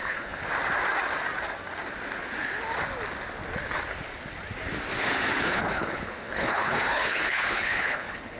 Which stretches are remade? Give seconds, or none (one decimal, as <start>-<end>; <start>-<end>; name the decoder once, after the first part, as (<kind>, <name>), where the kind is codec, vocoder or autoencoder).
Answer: 0.0-0.4 (codec, HILCodec); 5.4-8.4